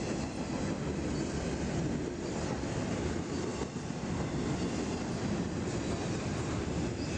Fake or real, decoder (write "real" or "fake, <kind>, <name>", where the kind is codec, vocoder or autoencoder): real